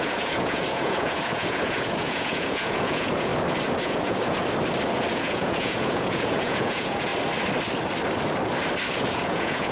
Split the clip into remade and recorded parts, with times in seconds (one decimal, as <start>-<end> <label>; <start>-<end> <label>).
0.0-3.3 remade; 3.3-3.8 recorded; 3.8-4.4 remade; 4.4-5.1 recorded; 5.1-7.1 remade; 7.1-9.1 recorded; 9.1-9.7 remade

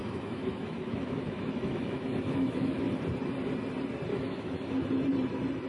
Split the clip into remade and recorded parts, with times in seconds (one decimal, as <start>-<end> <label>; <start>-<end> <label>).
0.0-2.9 remade; 2.9-4.1 recorded; 4.1-4.8 remade; 4.8-5.7 recorded

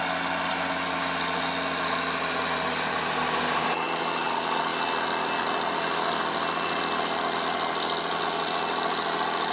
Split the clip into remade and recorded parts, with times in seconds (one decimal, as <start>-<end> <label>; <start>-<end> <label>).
0.0-9.5 recorded